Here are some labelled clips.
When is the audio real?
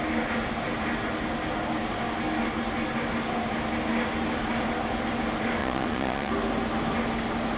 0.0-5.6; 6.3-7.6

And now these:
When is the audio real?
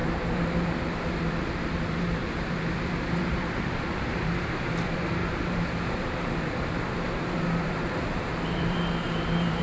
none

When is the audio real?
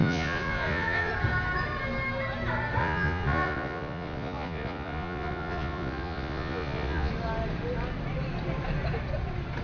1.1-2.8; 7.1-9.6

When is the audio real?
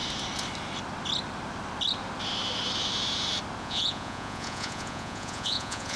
0.0-3.6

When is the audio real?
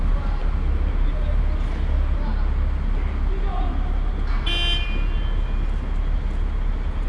0.0-7.1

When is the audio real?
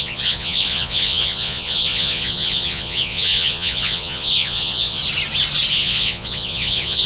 5.0-5.7